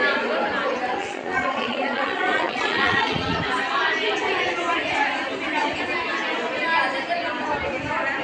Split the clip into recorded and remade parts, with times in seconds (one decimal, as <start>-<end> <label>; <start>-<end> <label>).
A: 0.0-1.0 recorded; 1.0-3.4 remade; 3.4-8.2 recorded